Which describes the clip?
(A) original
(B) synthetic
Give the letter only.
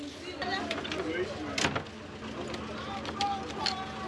A